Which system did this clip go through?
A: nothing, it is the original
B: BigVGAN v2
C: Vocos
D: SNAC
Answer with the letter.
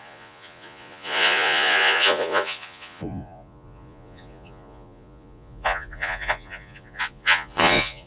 C